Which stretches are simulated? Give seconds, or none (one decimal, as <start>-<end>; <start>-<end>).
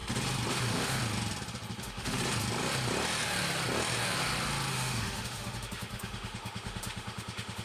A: 0.5-1.0; 1.8-2.2; 4.7-7.6